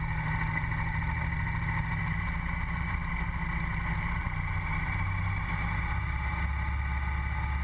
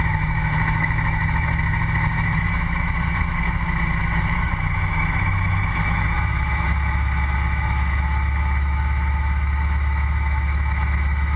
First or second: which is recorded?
first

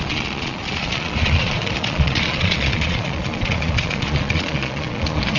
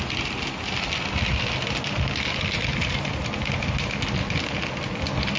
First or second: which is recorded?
second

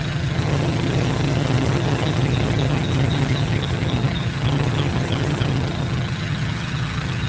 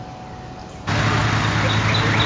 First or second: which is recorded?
second